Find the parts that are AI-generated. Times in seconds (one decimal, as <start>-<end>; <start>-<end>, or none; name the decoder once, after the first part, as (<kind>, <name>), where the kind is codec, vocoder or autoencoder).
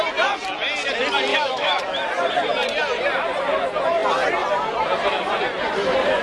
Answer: 1.3-1.8 (autoencoder, DAC-VAE)